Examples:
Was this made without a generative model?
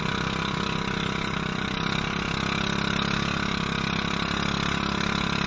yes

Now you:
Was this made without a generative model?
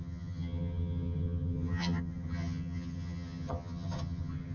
no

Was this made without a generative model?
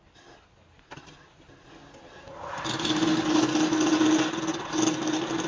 yes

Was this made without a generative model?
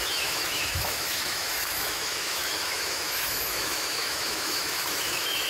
no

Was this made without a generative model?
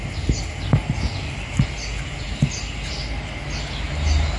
yes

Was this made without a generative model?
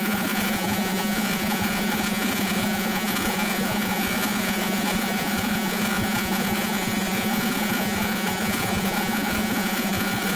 no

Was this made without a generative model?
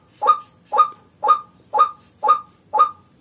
yes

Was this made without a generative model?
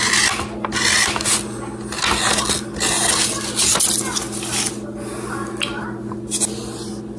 yes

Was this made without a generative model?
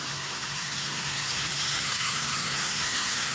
no